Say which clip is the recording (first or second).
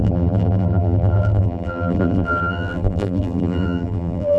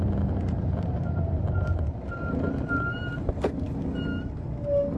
second